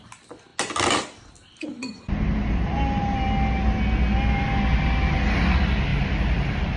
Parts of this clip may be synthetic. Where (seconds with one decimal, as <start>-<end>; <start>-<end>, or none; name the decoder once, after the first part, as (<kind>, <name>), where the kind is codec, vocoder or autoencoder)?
none